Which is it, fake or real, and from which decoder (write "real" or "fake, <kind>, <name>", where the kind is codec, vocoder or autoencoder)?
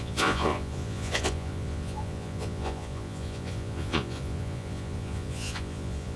fake, vocoder, Vocos